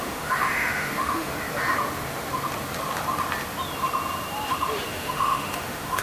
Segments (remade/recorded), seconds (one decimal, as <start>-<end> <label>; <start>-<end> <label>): 0.0-1.3 remade; 1.3-4.9 recorded; 4.9-6.0 remade